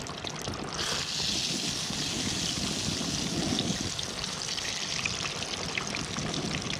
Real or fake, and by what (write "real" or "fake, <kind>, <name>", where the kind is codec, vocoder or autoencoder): real